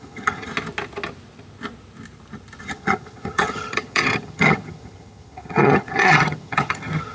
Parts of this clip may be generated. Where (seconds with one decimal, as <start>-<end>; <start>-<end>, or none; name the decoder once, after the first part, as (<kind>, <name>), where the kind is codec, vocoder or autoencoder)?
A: 0.0-0.5 (vocoder, HiFi-GAN); 2.6-7.1